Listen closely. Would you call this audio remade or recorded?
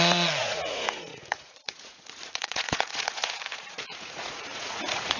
remade